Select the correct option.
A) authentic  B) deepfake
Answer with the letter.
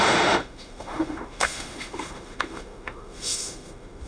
B